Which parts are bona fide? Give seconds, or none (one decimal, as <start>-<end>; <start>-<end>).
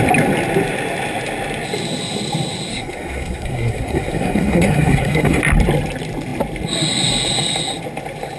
0.0-2.7; 5.4-8.4